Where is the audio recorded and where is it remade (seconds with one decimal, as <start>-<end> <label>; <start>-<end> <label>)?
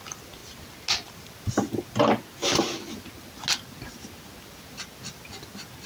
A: 0.0-5.9 recorded